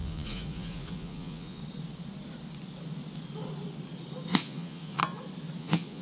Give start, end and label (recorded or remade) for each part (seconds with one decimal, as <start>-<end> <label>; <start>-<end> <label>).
0.0-1.6 remade; 1.6-4.3 recorded; 4.3-5.0 remade; 5.0-5.6 recorded; 5.6-6.0 remade